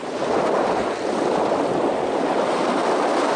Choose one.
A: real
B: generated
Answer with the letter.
A